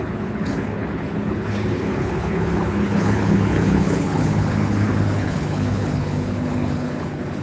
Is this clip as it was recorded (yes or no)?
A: no